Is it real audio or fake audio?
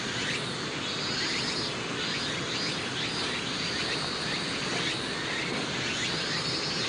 real